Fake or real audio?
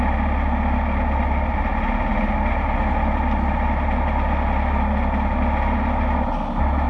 real